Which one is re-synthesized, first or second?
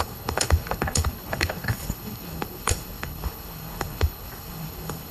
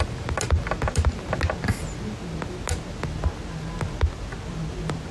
first